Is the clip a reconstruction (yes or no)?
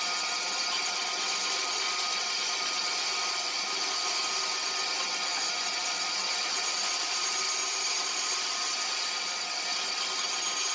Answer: no